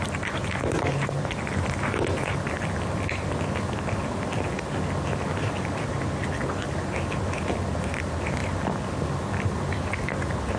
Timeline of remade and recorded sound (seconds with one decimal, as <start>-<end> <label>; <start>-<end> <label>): 0.0-10.6 recorded